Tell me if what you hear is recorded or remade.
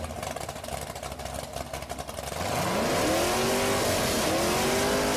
recorded